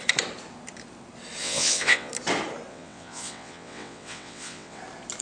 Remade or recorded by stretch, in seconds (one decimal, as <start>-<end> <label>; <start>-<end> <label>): 0.0-1.4 recorded; 1.4-2.1 remade; 2.1-2.7 recorded; 2.7-4.8 remade; 4.8-5.2 recorded